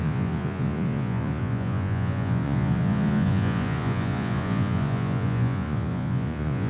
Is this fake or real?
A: fake